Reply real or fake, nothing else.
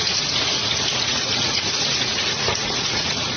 fake